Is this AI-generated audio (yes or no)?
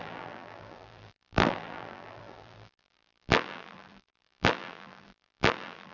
yes